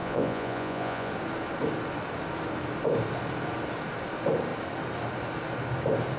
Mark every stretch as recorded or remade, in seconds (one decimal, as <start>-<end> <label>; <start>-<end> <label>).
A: 0.0-1.1 remade; 1.1-6.2 recorded